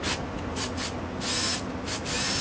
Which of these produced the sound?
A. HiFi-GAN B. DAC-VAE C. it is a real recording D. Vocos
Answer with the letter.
C